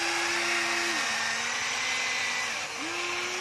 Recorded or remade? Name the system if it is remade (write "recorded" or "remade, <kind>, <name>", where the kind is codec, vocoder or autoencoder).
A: recorded